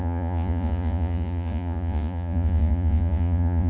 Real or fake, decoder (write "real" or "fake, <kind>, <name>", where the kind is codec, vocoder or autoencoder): fake, vocoder, Vocos